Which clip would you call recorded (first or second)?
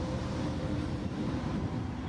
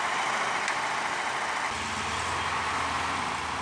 second